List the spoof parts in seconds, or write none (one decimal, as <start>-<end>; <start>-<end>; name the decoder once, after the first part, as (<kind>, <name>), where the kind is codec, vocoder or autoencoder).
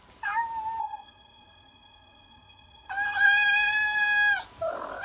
0.8-2.9 (codec, SNAC)